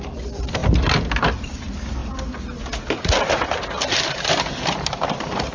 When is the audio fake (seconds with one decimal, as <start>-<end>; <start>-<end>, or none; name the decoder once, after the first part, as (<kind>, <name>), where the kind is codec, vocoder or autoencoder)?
0.0-2.0 (vocoder, BigVGAN v2); 5.1-5.5